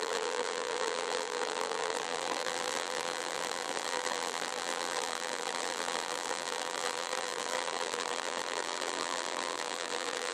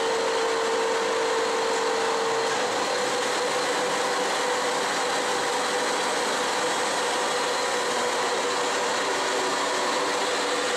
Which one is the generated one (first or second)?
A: first